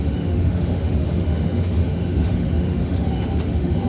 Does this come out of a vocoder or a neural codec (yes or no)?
yes